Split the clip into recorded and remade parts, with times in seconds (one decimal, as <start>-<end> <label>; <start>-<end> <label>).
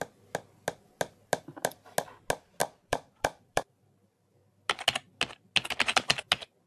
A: 0.0-2.6 recorded; 2.6-3.8 remade; 3.8-6.7 recorded